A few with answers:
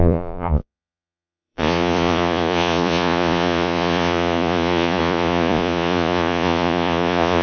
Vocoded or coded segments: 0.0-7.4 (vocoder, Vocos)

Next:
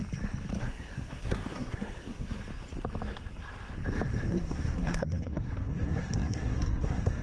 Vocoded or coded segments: 0.6-2.4 (codec, SNAC); 4.3-7.2

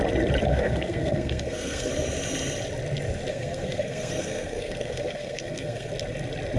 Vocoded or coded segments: 0.5-1.9 (codec, SNAC); 3.3-5.9